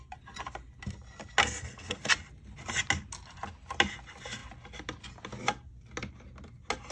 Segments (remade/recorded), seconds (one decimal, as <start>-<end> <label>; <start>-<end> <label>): 0.0-1.4 recorded; 1.4-2.1 remade; 2.1-6.9 recorded